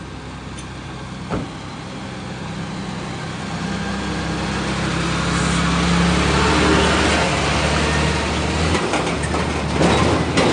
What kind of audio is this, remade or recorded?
recorded